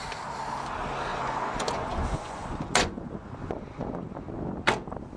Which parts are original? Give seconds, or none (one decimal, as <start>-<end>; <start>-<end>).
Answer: 0.0-1.1; 4.2-5.2